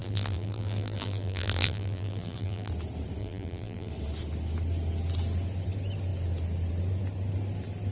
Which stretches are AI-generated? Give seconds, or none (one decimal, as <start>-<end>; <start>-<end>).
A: 0.0-2.7; 3.2-3.9